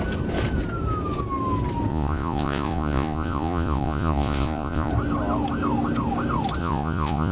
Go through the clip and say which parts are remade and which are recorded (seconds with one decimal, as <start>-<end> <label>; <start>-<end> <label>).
0.0-1.9 recorded; 1.9-4.9 remade; 4.9-6.6 recorded; 6.6-7.3 remade